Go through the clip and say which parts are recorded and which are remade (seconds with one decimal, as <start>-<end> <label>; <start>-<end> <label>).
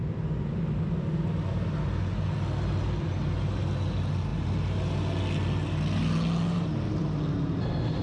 0.0-8.0 recorded